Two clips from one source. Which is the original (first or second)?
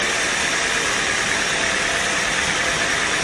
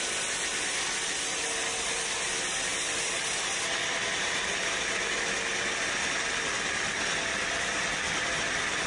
second